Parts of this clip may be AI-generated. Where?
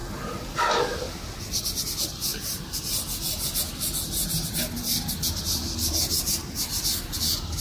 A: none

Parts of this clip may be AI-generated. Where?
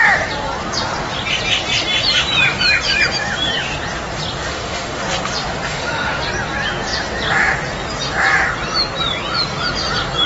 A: 4.5-5.0 (autoencoder, DAC-VAE); 5.7-6.2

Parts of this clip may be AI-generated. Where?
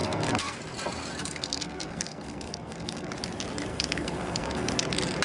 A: 0.0-0.6 (codec, SNAC); 1.2-3.1; 3.7-4.7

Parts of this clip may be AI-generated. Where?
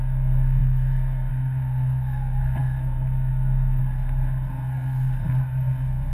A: 0.0-3.8 (codec, SNAC); 4.5-6.1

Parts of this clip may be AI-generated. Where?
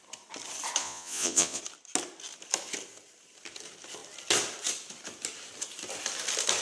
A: 0.8-1.6 (vocoder, Vocos)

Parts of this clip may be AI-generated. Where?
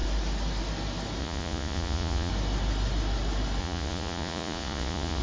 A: 1.2-2.3 (vocoder, Vocos); 3.6-5.2